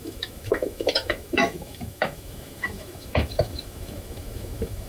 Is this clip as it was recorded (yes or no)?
no